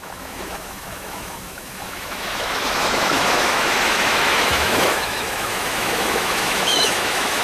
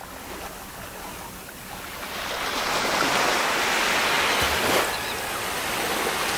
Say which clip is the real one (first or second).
second